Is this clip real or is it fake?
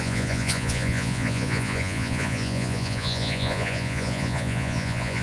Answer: fake